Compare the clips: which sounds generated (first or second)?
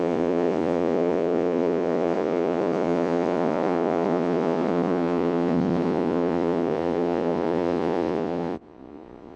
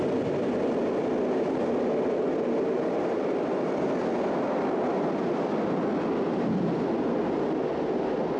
first